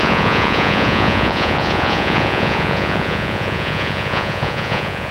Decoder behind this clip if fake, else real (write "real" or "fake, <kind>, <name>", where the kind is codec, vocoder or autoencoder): fake, vocoder, Vocos